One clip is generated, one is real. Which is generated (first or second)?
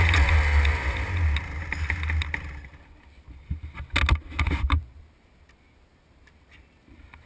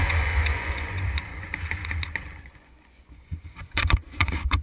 second